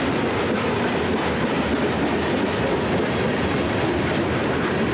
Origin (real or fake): real